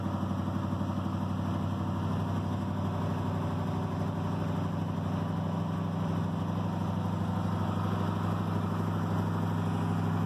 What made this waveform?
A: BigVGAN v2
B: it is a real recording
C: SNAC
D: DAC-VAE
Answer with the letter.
B